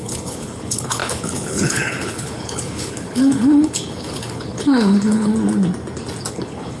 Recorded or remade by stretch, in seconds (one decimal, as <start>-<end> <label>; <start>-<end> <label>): 0.0-5.3 remade; 5.3-6.3 recorded; 6.3-6.8 remade